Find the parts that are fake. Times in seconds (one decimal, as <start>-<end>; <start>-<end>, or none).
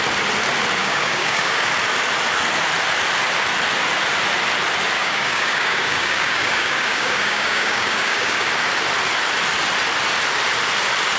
0.8-1.7; 5.0-8.5